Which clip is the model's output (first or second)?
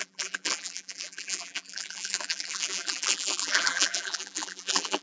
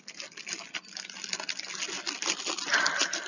first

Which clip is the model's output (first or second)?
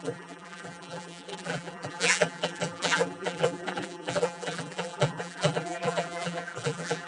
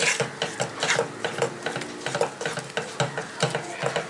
first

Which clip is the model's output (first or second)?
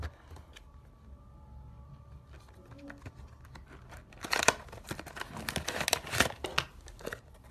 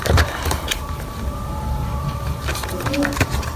second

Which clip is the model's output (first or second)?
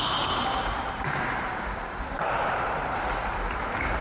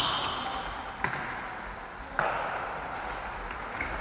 first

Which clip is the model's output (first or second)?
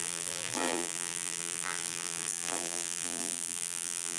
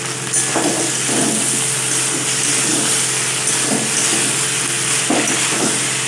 first